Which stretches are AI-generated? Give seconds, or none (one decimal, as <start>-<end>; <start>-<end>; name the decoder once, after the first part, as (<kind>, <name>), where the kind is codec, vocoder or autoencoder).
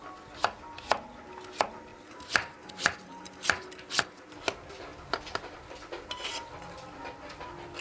1.9-3.7 (vocoder, BigVGAN v2); 4.9-6.5